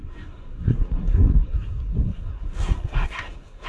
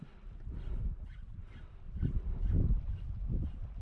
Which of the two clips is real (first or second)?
second